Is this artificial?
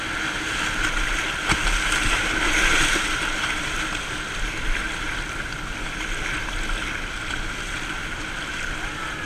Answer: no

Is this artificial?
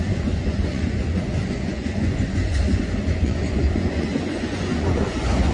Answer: yes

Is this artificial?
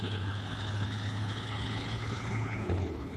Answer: yes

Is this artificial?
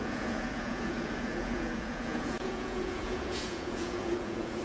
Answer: yes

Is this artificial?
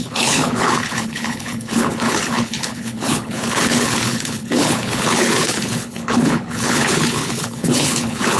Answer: yes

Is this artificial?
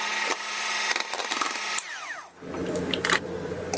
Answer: no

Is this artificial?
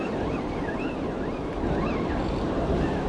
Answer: no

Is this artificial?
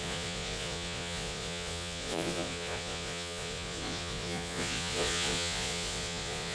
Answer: yes